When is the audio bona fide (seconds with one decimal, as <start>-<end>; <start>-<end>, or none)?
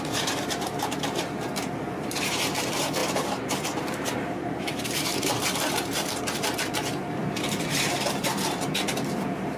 none